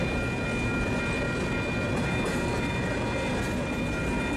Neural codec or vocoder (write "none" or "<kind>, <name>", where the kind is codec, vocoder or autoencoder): none